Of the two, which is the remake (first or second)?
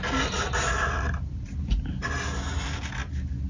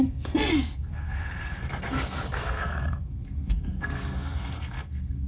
second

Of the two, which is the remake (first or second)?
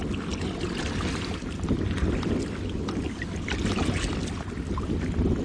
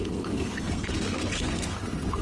second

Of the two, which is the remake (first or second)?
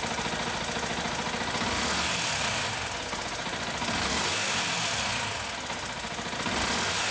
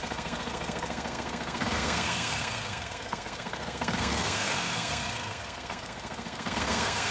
second